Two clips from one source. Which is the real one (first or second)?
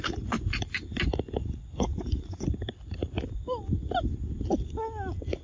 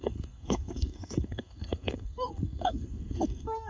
first